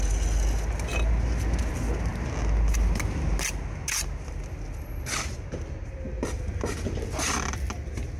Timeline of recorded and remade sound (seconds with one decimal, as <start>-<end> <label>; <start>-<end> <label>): 0.0-8.2 recorded